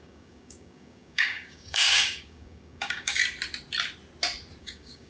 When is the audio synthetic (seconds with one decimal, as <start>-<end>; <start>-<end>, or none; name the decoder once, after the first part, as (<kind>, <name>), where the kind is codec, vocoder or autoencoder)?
0.0-3.2 (codec, DAC); 4.6-5.1